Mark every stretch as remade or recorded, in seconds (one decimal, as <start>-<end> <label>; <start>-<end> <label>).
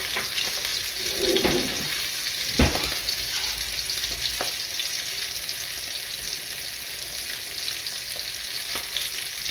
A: 0.0-9.5 recorded